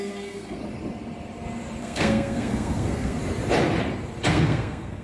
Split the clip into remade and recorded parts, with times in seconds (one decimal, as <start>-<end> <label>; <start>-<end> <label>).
0.0-0.6 remade; 0.6-1.8 recorded; 1.8-3.2 remade; 3.2-4.3 recorded; 4.3-5.0 remade